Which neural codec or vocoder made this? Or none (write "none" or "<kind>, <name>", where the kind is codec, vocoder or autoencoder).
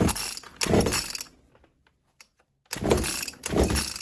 none